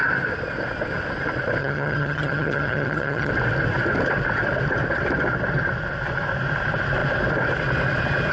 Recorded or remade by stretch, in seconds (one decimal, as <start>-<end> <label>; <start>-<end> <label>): 0.0-1.6 recorded; 1.6-3.3 remade; 3.3-8.3 recorded

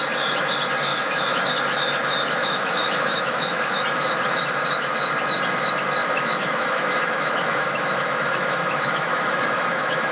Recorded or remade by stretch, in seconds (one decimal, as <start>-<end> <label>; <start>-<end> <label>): 0.0-0.9 recorded; 0.9-1.4 remade; 1.4-2.4 recorded; 2.4-3.8 remade; 3.8-6.0 recorded; 6.0-10.1 remade

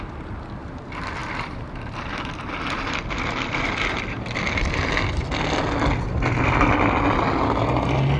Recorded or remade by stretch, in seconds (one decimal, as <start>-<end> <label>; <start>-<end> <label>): 0.0-1.2 recorded; 1.2-4.4 remade; 4.4-8.2 recorded

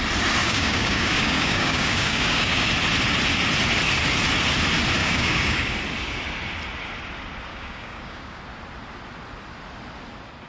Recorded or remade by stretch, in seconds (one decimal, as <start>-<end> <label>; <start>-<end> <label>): 0.0-0.4 recorded; 0.4-2.7 remade; 2.7-5.0 recorded; 5.0-5.7 remade; 5.7-7.5 recorded; 7.5-8.4 remade; 8.4-10.5 recorded